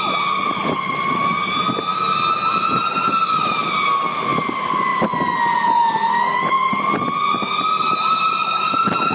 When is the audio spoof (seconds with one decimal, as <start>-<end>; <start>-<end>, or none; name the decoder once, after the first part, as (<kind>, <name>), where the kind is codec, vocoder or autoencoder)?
none